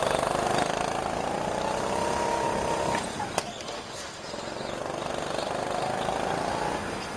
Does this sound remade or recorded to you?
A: recorded